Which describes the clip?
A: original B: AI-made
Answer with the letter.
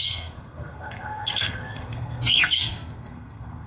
B